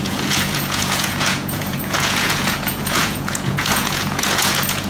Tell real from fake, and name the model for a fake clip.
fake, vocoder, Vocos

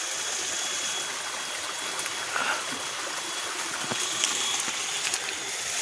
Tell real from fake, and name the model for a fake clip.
real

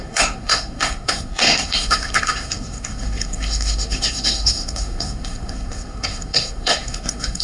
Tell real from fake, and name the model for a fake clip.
fake, codec, SNAC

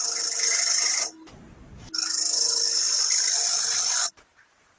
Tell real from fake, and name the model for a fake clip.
real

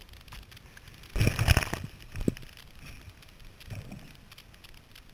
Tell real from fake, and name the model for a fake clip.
real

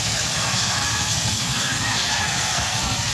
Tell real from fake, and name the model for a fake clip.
fake, codec, SNAC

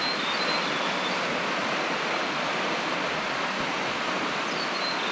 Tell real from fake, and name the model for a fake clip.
real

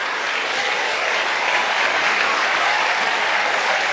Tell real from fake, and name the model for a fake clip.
fake, codec, DAC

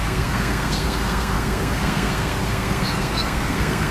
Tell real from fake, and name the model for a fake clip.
fake, codec, SNAC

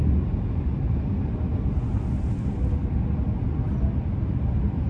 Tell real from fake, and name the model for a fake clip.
real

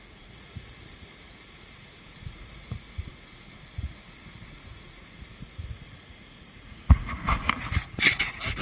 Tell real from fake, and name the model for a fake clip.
fake, vocoder, Vocos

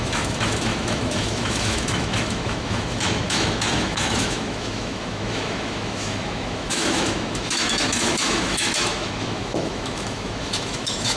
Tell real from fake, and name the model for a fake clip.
fake, autoencoder, DAC-VAE